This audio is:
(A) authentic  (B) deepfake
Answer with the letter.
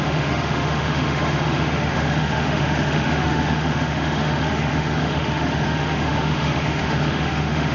B